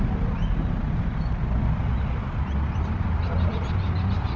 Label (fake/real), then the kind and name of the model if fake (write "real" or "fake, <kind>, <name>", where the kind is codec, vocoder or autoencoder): real